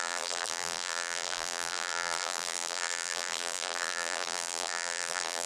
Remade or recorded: remade